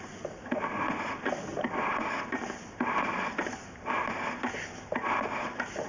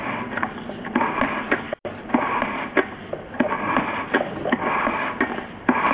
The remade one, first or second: second